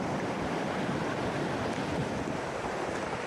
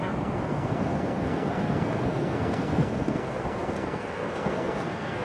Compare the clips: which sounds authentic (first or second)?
first